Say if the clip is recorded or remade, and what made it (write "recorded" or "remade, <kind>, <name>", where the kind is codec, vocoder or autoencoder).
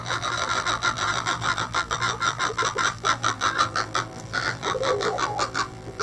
remade, vocoder, BigVGAN v2